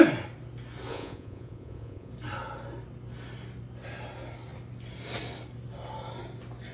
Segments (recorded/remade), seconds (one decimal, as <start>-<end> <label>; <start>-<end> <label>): 0.0-0.9 recorded; 0.9-2.1 remade; 2.1-6.7 recorded